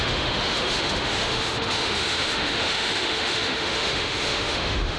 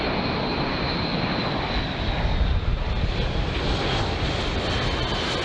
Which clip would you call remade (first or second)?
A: first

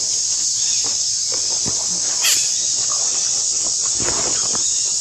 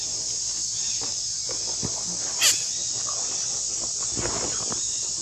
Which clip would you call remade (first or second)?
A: first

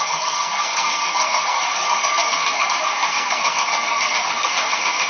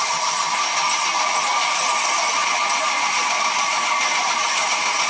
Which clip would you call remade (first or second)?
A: first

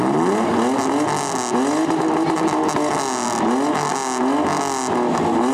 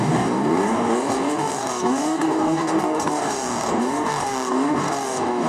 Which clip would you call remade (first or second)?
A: second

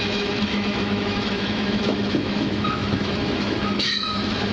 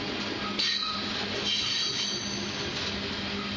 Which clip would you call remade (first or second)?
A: first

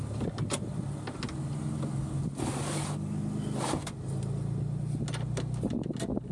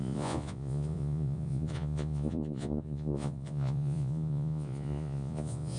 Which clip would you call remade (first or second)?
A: second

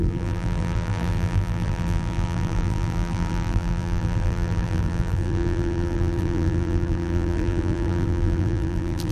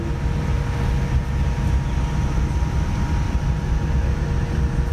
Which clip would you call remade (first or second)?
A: first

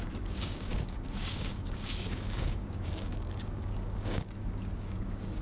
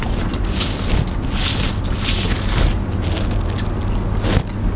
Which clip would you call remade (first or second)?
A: first